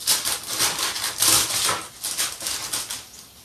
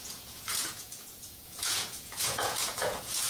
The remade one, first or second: second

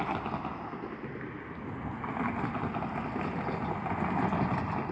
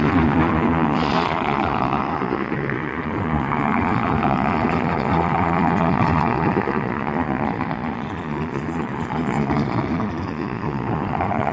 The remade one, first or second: second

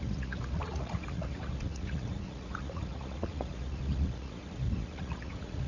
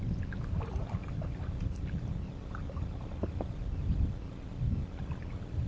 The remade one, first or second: first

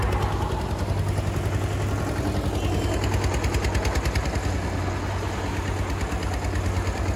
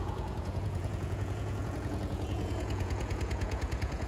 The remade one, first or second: second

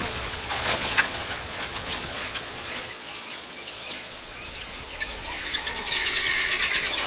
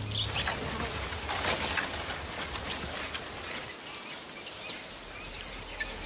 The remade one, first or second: first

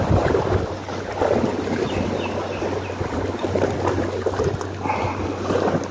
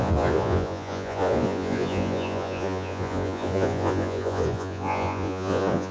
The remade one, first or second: second